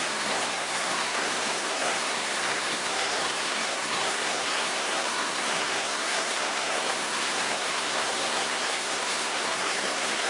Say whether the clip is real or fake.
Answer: fake